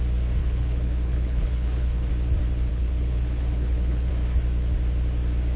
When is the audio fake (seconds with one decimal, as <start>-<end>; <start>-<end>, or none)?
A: 0.4-2.1; 2.7-4.1

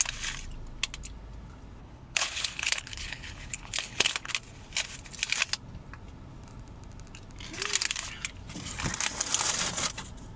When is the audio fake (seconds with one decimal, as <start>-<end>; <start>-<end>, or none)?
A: 1.8-4.3

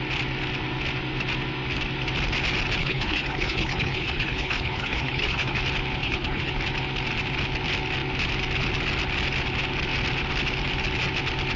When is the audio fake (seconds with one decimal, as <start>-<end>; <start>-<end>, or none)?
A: 2.8-5.6; 6.0-6.5

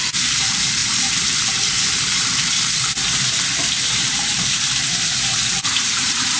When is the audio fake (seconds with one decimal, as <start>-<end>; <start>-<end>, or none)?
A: 0.0-6.4